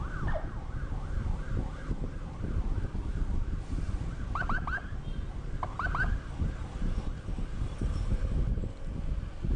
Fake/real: real